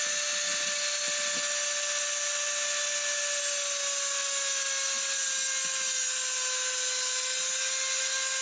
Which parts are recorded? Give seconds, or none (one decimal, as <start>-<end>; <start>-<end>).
0.0-8.4